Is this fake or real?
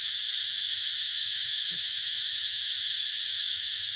fake